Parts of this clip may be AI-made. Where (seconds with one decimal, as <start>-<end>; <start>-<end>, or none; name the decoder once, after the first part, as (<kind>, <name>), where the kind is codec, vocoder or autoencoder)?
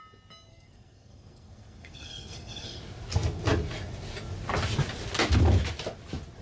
0.5-2.8 (codec, SNAC)